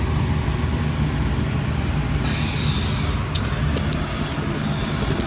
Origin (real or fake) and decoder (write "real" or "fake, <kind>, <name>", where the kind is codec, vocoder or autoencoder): real